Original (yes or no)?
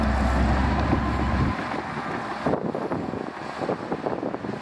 yes